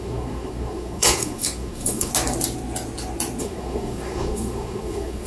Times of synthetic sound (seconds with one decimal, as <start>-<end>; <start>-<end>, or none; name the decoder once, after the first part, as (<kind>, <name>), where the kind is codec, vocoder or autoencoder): 0.0-2.1 (codec, SNAC); 3.4-5.3